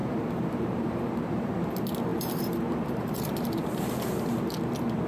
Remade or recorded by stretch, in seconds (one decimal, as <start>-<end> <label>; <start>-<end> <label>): 0.0-1.5 remade; 1.5-2.1 recorded; 2.1-4.4 remade; 4.4-5.1 recorded